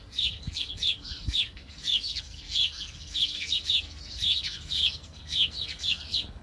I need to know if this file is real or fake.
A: fake